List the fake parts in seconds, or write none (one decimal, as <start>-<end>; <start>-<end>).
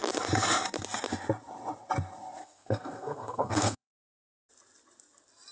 2.4-4.5